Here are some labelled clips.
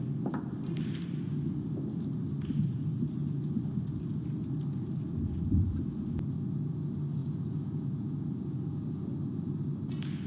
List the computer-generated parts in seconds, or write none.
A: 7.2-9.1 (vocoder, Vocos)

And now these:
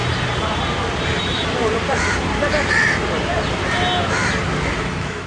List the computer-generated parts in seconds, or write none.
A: 1.2-1.6 (autoencoder, DAC-VAE); 4.8-5.3

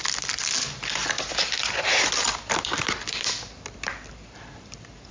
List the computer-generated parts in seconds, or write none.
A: 1.0-4.1 (vocoder, BigVGAN v2)